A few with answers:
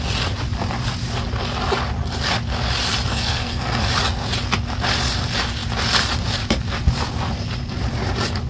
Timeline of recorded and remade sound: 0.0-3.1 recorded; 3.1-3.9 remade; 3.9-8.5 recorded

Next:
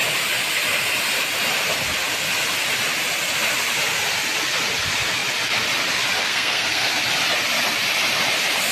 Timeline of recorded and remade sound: 0.0-6.2 recorded; 6.2-6.9 remade; 6.9-8.7 recorded

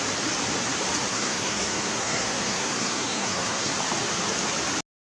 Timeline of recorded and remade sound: 0.0-1.1 recorded; 1.1-3.7 remade; 3.7-5.1 recorded

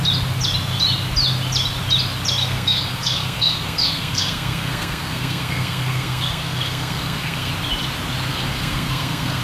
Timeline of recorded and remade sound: 0.0-2.4 recorded; 2.4-7.5 remade; 7.5-8.3 recorded; 8.3-9.4 remade

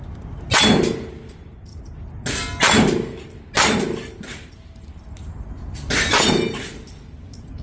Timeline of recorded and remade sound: 0.0-7.6 recorded